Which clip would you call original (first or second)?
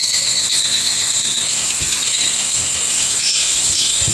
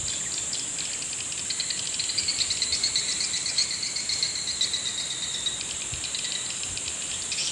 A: second